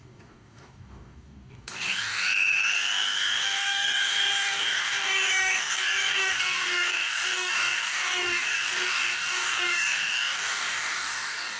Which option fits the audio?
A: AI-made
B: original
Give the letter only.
A